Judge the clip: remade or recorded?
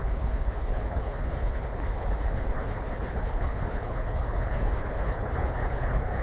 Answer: remade